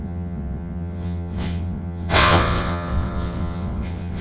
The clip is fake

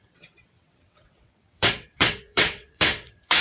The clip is fake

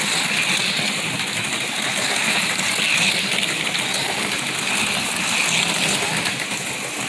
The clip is real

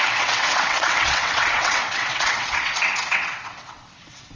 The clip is fake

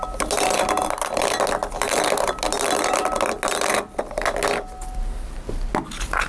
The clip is real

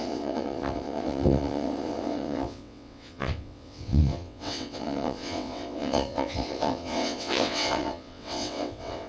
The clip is fake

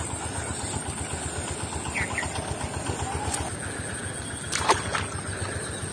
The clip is real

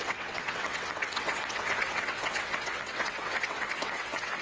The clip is fake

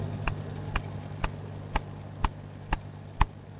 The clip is real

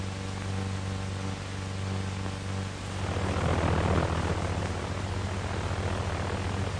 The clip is real